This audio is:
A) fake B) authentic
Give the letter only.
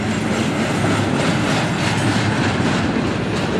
B